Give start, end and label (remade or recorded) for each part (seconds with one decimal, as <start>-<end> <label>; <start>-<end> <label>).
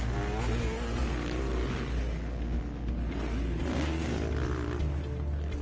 0.0-3.7 recorded; 3.7-4.2 remade; 4.2-5.6 recorded